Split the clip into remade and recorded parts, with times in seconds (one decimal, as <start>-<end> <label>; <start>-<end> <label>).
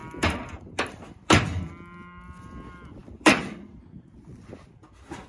0.0-1.7 remade; 1.7-3.0 recorded; 3.0-3.7 remade; 3.7-5.3 recorded